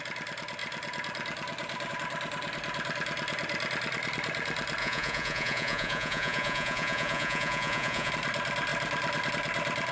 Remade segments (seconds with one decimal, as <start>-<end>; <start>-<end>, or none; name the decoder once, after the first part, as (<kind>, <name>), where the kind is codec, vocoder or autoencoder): 4.8-8.1 (vocoder, Vocos)